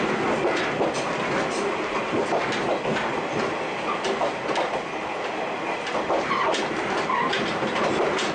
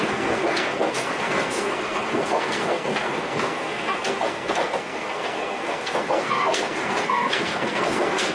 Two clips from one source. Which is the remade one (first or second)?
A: second